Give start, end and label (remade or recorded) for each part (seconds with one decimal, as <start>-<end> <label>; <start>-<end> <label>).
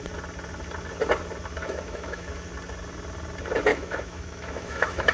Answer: 0.0-1.6 recorded; 1.6-2.3 remade; 2.3-3.7 recorded; 3.7-5.1 remade